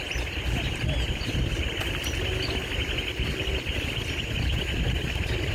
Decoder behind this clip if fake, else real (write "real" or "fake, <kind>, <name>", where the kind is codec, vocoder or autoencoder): real